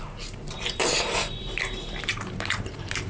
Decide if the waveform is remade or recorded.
remade